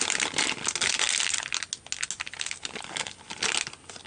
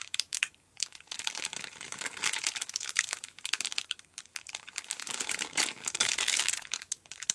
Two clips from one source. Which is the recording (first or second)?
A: first